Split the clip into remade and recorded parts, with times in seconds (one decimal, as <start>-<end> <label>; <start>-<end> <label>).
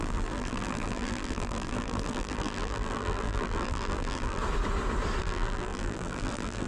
0.0-4.4 remade; 4.4-5.2 recorded; 5.2-6.7 remade